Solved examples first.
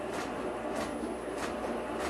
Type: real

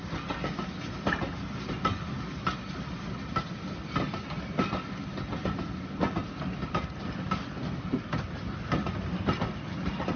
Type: real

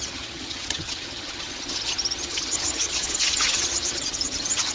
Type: fake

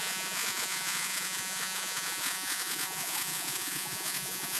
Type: fake